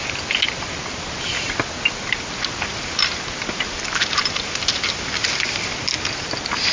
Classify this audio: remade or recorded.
recorded